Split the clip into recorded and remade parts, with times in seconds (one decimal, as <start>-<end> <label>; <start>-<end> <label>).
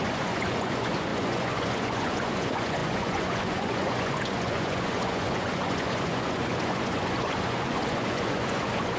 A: 0.0-9.0 remade